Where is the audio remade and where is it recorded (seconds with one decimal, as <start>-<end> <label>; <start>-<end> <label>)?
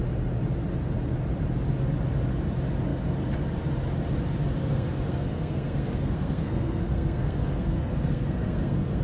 0.0-4.6 recorded; 4.6-9.0 remade